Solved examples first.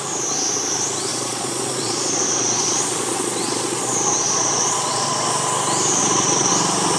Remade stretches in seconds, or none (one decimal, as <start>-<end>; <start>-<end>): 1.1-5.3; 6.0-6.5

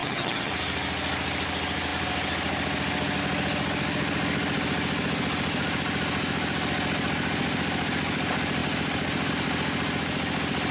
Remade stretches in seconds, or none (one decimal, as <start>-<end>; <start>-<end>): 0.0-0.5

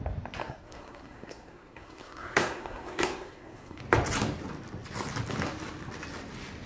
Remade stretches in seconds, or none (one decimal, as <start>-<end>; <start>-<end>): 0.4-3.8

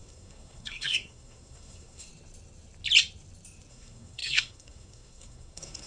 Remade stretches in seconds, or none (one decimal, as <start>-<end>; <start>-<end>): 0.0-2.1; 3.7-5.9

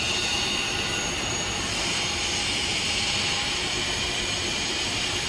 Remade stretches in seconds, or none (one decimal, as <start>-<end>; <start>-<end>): none